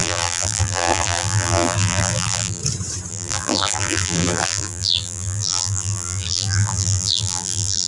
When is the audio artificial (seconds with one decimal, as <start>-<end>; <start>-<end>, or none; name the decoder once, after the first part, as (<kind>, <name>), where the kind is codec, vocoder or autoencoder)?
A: 0.0-2.6 (vocoder, BigVGAN v2); 3.1-7.9